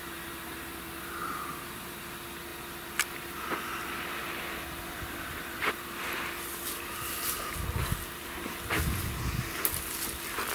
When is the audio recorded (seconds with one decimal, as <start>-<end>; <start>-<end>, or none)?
0.0-10.5